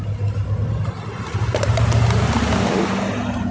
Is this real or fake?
real